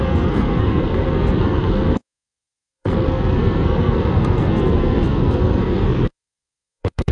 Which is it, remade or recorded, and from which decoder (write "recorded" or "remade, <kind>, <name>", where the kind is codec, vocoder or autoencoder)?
remade, codec, SNAC